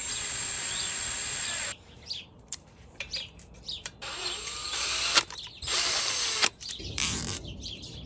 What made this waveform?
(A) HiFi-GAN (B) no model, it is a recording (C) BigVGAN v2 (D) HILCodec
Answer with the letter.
C